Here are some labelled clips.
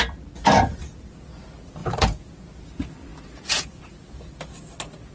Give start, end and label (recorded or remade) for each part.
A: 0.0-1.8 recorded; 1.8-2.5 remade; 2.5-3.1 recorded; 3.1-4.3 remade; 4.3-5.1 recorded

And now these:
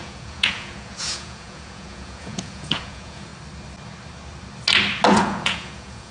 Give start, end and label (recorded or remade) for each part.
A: 0.0-3.3 remade; 3.3-5.1 recorded; 5.1-6.1 remade

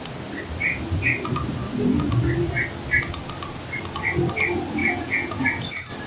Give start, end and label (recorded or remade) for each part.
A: 0.0-4.8 recorded; 4.8-5.4 remade; 5.4-6.1 recorded

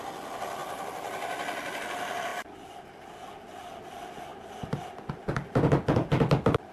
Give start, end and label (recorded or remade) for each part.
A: 0.0-6.7 recorded

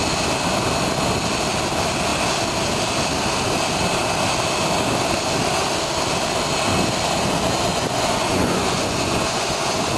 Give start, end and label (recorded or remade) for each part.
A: 0.0-7.7 recorded; 7.7-10.0 remade

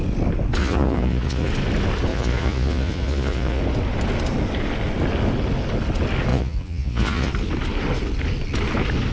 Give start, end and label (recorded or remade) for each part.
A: 0.0-0.6 recorded; 0.6-1.5 remade; 1.5-2.1 recorded; 2.1-3.6 remade; 3.6-6.3 recorded; 6.3-7.3 remade; 7.3-9.1 recorded